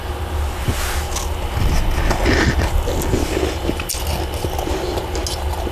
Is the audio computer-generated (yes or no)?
no